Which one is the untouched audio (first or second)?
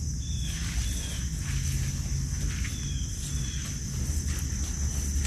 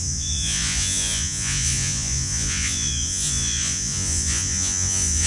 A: first